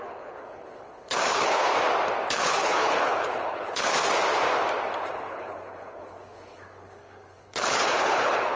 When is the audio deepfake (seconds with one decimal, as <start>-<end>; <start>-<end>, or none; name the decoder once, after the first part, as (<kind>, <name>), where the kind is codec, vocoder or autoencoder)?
0.0-1.7 (codec, HILCodec); 2.3-3.9; 5.1-8.6